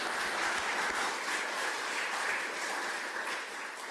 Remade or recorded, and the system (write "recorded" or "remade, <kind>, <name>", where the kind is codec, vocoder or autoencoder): recorded